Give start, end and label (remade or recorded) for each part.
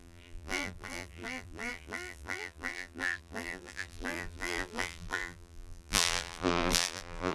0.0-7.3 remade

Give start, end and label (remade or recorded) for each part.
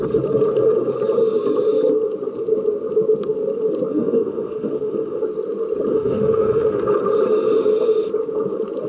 0.0-3.9 recorded; 3.9-5.2 remade; 5.2-5.9 recorded; 5.9-6.8 remade; 6.8-8.9 recorded